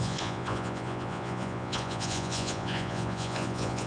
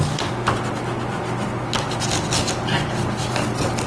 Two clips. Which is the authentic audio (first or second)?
second